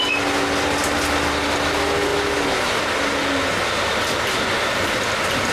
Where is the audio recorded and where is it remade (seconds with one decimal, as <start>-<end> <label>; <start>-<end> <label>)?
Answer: 0.0-5.5 recorded